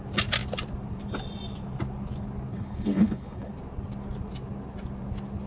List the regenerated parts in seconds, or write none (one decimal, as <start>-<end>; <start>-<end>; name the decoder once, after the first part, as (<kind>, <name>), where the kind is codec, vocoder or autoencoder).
2.5-3.5 (codec, HILCodec)